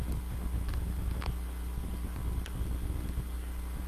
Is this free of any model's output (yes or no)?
yes